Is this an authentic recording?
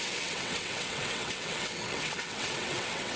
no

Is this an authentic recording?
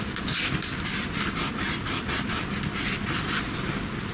yes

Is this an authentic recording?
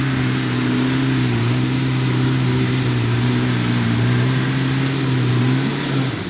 yes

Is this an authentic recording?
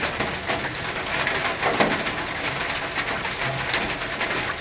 yes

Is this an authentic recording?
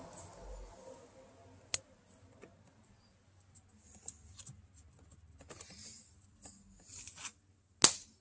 yes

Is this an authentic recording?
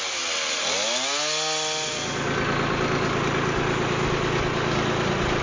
yes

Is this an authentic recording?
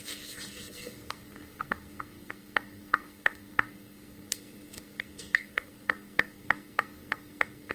no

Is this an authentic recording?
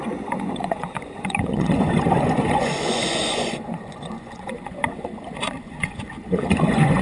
no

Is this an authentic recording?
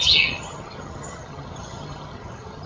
no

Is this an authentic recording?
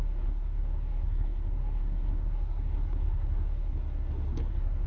no